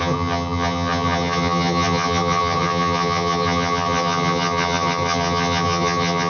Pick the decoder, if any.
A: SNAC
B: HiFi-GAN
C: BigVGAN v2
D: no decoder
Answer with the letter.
B